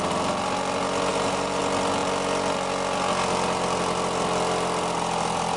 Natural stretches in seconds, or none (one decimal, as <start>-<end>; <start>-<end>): 0.0-1.1; 1.6-5.6